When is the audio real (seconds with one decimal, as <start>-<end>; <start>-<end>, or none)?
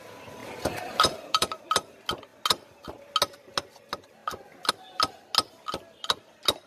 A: 0.0-0.4; 1.6-6.7